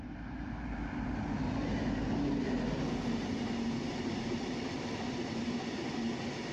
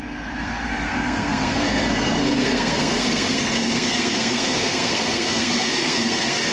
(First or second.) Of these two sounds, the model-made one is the second